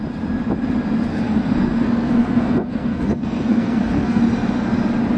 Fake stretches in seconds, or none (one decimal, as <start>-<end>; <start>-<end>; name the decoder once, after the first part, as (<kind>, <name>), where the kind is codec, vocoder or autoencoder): 1.1-4.2 (codec, SNAC)